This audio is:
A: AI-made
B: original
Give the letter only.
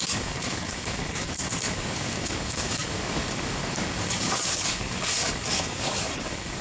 A